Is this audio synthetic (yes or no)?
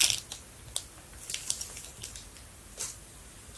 no